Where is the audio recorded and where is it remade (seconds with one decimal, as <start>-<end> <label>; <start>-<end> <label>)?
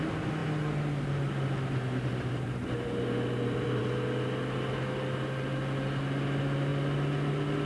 0.0-7.7 recorded